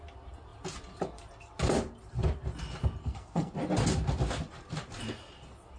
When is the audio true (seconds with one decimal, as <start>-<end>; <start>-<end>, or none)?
0.0-3.0; 3.5-5.8